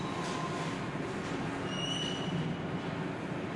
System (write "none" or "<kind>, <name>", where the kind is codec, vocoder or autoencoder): none